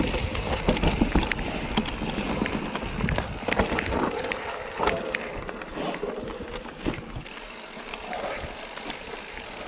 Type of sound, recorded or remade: recorded